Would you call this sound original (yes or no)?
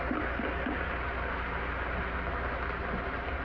yes